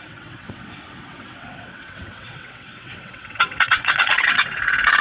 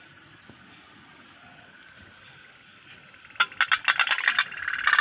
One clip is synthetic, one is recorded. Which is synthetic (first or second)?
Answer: first